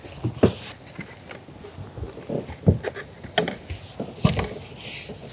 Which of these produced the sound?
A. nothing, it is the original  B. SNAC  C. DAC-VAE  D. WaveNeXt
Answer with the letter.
A